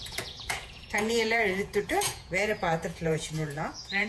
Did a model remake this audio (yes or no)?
yes